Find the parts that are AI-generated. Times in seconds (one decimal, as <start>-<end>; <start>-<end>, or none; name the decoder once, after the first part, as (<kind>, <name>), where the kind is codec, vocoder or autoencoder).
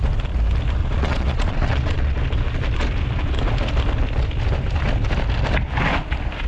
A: 0.8-2.2 (vocoder, Vocos)